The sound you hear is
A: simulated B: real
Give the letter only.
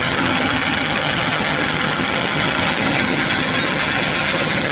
A